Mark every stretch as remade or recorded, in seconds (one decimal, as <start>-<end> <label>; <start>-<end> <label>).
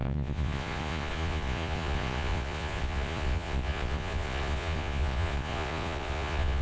0.0-6.6 remade